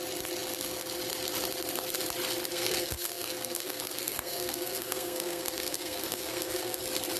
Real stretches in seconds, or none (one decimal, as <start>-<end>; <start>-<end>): 0.0-2.5; 6.8-7.2